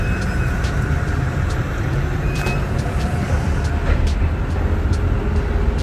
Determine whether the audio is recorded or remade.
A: recorded